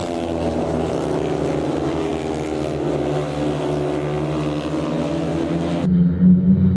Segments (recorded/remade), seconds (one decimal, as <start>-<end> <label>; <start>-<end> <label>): 0.0-0.9 remade; 0.9-6.8 recorded